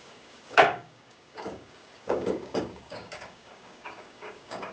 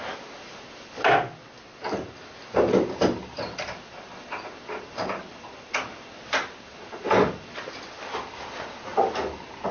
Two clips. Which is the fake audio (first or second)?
first